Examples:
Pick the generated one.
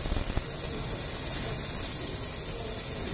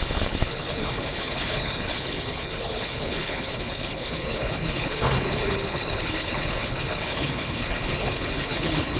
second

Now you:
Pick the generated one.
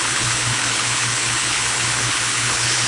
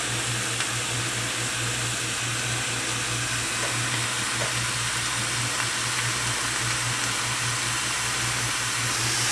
first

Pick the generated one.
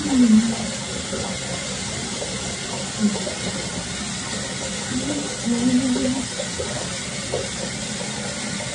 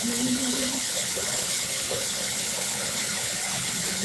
second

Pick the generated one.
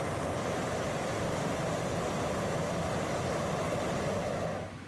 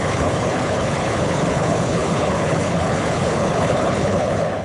second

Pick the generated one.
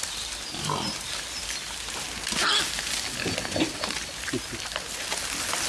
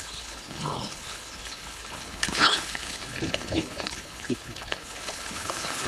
second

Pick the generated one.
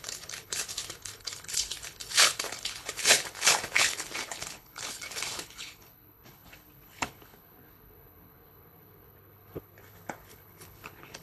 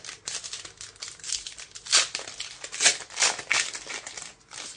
first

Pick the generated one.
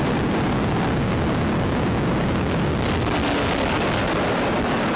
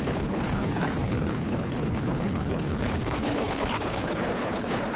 second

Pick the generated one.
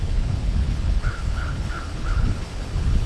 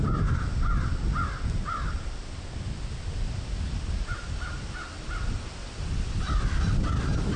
first